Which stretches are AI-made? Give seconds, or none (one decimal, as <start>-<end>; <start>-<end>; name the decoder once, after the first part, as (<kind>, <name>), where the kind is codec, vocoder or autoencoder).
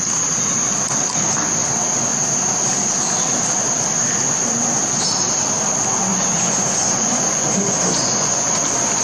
6.1-8.5 (vocoder, Vocos)